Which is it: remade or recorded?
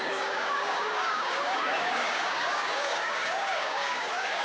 remade